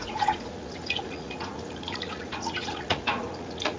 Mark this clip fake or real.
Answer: fake